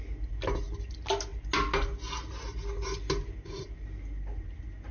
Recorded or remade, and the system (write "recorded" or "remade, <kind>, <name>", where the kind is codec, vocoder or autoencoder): recorded